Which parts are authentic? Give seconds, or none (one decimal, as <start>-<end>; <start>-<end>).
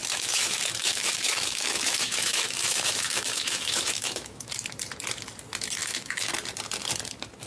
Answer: 4.5-5.8; 6.3-7.5